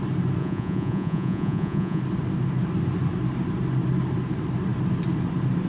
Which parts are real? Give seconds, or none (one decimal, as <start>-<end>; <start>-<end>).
0.0-0.4; 2.0-5.7